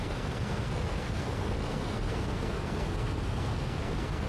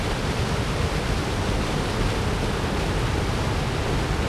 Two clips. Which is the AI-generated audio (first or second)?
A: first